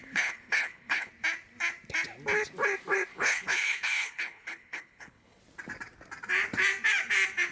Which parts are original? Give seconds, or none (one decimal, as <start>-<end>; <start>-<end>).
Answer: 1.1-3.1; 5.4-7.5

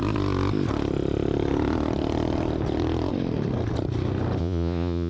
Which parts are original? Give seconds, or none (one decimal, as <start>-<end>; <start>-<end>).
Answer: 0.0-4.4

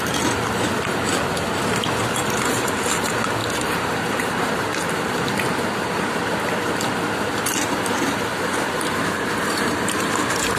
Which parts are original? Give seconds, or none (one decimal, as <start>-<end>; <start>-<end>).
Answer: 0.0-3.4; 5.3-8.3